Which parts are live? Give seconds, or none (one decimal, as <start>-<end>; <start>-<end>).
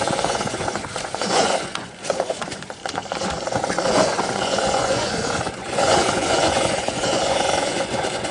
none